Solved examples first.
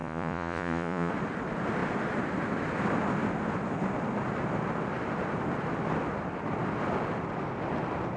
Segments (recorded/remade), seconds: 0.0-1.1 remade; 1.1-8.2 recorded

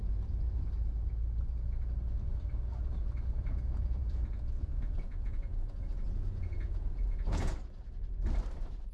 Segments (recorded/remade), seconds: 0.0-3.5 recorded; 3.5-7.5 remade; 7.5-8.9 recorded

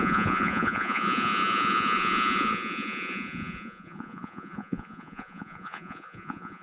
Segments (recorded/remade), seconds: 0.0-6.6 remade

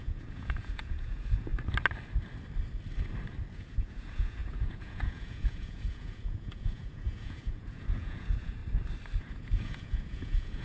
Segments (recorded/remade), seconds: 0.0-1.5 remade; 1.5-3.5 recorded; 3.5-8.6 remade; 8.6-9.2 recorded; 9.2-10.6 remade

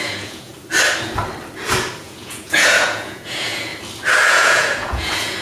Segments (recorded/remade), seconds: 0.0-0.5 remade; 0.5-2.0 recorded; 2.0-3.7 remade; 3.7-4.3 recorded; 4.3-5.4 remade

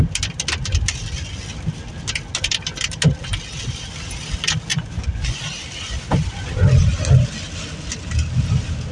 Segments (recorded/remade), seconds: 0.0-4.7 recorded; 4.7-5.4 remade; 5.4-8.9 recorded

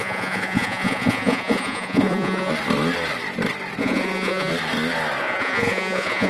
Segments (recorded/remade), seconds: 0.0-2.5 remade; 2.5-3.8 recorded; 3.8-4.5 remade; 4.5-5.2 recorded; 5.2-6.3 remade

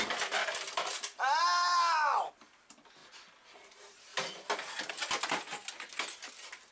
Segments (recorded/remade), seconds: 0.0-6.7 recorded